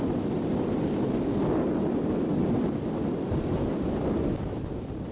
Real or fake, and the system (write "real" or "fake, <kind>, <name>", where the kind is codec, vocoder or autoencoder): real